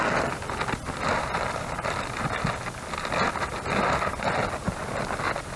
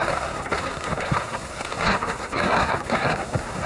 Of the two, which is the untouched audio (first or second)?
first